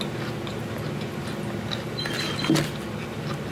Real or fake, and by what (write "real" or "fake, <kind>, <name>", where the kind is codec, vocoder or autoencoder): real